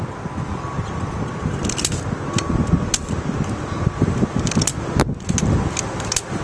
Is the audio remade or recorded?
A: recorded